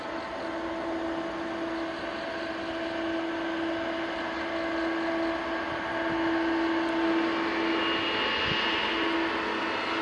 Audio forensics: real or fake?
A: real